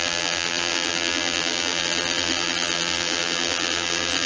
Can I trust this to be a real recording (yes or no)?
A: no